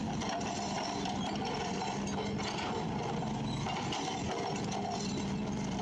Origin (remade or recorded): remade